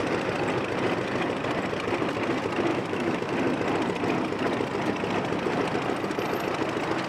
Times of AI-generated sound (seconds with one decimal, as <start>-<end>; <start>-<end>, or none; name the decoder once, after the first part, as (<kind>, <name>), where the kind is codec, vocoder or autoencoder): 2.7-3.3 (autoencoder, DAC-VAE)